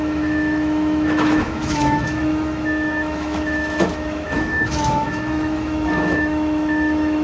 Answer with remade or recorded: remade